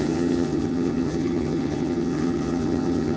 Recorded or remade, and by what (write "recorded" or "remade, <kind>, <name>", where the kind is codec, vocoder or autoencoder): remade, vocoder, HiFi-GAN